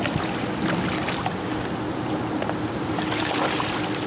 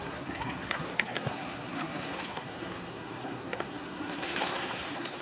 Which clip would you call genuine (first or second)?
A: first